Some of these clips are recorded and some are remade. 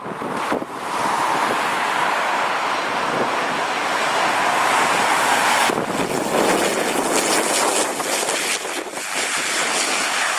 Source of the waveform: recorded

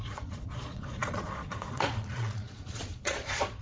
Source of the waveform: remade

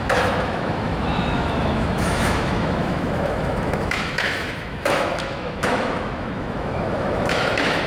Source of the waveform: remade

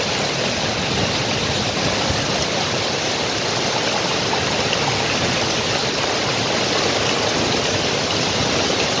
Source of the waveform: remade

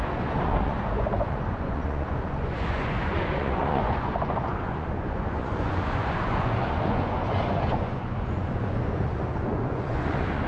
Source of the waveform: remade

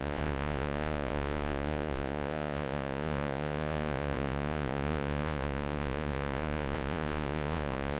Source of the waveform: remade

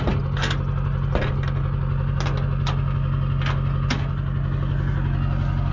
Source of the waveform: recorded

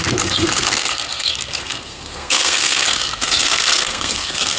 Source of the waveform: remade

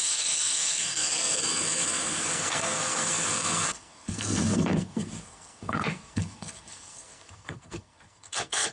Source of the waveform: remade